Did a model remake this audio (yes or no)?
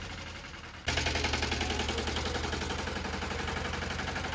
no